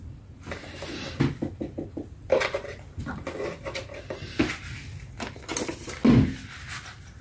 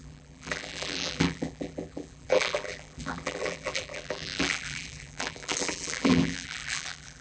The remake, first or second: second